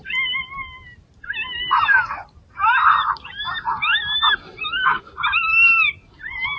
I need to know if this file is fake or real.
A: real